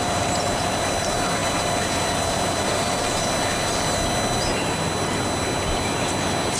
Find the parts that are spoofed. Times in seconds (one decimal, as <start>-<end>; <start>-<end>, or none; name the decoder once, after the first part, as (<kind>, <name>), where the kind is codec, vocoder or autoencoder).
none